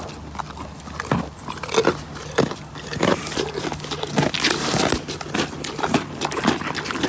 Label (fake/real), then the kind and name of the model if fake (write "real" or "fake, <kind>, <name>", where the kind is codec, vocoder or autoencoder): real